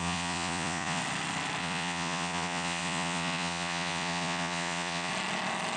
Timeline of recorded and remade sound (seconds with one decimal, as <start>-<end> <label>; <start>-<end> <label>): 0.0-1.0 remade; 1.0-1.6 recorded; 1.6-5.1 remade; 5.1-5.8 recorded